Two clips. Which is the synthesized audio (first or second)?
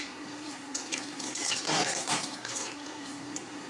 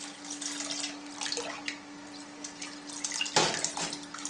first